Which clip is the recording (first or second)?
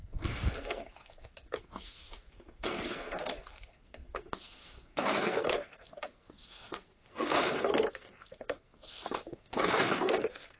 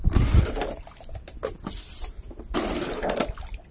second